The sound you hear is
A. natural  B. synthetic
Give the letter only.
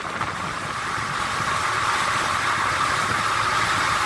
A